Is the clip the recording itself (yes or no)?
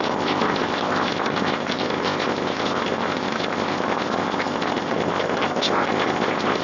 no